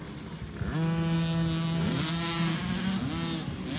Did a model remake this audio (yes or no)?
no